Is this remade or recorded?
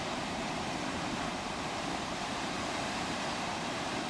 remade